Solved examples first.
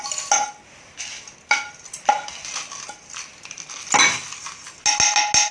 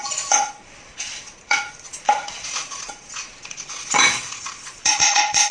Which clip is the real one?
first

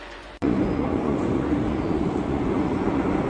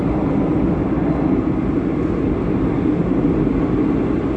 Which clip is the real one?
second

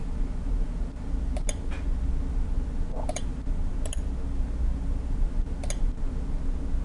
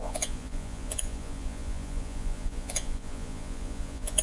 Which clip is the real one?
first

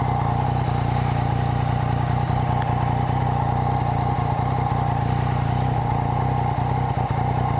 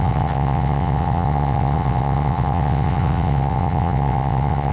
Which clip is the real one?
first